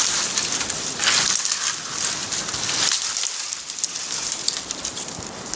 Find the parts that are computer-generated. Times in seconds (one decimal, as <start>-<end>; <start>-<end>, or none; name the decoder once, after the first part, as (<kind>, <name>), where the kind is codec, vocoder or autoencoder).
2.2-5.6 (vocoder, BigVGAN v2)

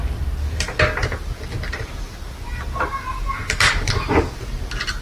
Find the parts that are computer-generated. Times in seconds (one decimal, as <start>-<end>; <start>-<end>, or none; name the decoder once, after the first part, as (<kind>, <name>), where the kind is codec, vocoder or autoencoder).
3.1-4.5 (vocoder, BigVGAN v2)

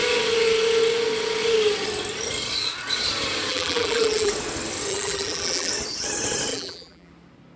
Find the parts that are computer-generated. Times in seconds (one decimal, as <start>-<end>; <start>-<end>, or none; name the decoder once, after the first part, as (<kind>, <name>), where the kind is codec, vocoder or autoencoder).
3.5-4.3 (vocoder, BigVGAN v2); 4.9-5.7; 6.5-7.1

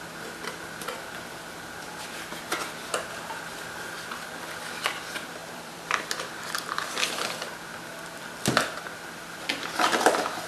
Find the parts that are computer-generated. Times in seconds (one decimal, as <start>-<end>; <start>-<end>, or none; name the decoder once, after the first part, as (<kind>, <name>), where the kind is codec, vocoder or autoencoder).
5.4-6.3 (vocoder, BigVGAN v2)

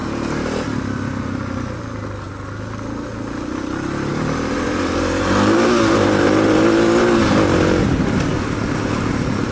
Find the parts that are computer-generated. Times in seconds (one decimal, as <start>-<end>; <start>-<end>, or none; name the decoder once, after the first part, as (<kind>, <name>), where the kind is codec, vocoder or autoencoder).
4.1-7.2 (vocoder, BigVGAN v2)